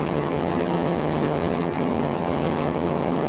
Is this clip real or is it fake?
fake